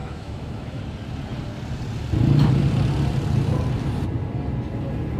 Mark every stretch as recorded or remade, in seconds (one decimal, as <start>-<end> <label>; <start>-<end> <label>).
0.0-0.8 remade; 0.8-5.2 recorded